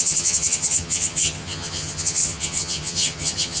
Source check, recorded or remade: remade